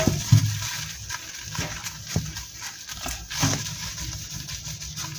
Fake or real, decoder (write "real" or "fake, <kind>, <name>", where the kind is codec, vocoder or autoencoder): real